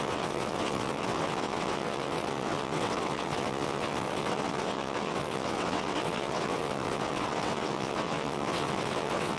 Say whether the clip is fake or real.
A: fake